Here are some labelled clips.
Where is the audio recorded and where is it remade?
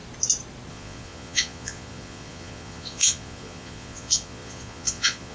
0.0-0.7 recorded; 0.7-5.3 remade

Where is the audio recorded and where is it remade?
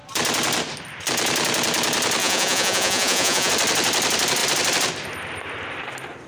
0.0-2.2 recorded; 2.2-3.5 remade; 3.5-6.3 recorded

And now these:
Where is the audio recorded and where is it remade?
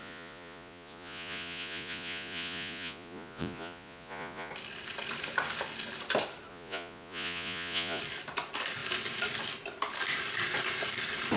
0.0-4.5 remade; 4.5-6.5 recorded; 6.5-8.0 remade; 8.0-11.4 recorded